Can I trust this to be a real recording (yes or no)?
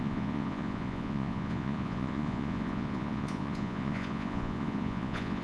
no